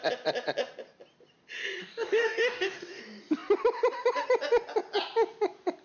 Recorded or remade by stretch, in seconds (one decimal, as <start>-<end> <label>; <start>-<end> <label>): 0.0-1.8 recorded; 1.8-3.0 remade; 3.0-5.8 recorded